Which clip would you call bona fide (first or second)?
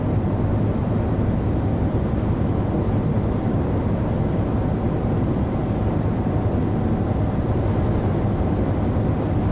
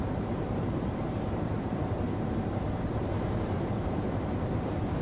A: first